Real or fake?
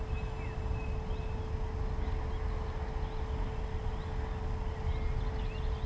real